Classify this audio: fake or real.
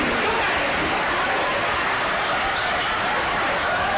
real